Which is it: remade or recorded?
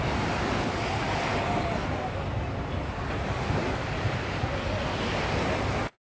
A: recorded